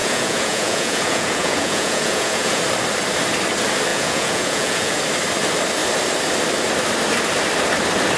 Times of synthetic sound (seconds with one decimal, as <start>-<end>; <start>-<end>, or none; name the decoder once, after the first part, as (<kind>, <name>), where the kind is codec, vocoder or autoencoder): 0.0-2.6 (vocoder, Vocos); 3.9-5.0